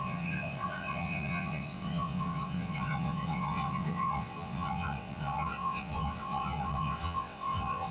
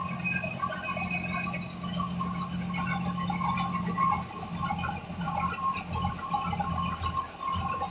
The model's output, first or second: first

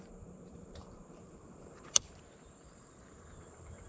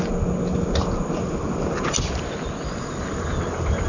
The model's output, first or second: first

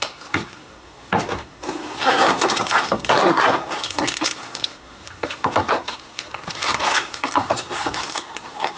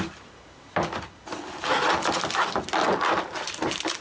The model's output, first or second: first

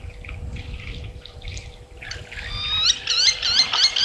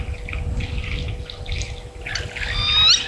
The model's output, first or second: first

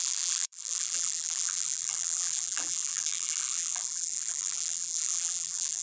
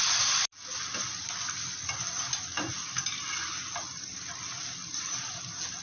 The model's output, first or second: first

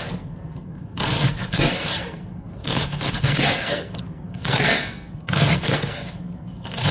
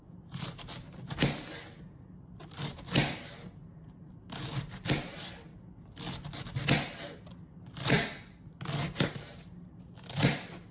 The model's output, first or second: first